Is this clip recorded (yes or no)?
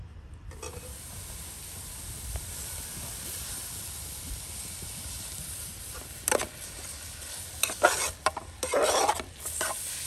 yes